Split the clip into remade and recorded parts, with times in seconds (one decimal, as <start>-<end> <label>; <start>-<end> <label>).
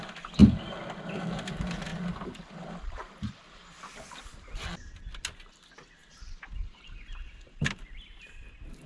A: 0.0-8.9 recorded